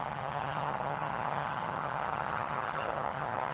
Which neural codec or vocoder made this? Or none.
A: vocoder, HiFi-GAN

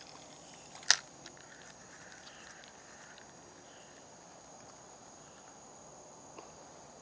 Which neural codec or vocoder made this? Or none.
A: none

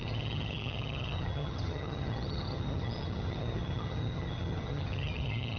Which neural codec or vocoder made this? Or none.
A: vocoder, HiFi-GAN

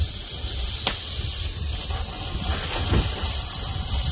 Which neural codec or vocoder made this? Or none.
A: none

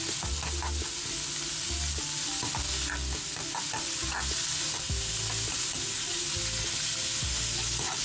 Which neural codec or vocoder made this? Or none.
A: none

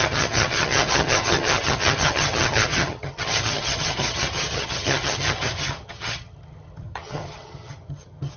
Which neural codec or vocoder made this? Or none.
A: vocoder, HiFi-GAN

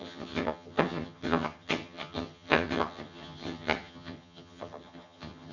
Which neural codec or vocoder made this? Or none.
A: vocoder, HiFi-GAN